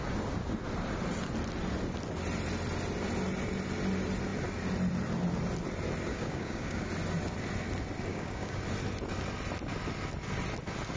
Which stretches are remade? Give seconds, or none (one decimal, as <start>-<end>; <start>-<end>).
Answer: 6.1-6.9; 8.1-8.6